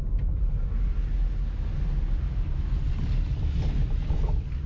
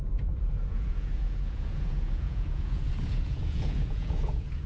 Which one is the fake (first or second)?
second